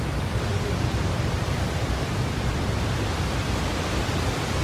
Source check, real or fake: real